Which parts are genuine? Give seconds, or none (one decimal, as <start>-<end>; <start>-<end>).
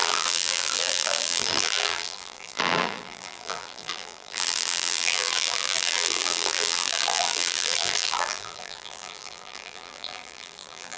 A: none